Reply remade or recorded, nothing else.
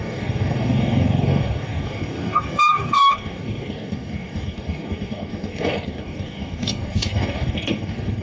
remade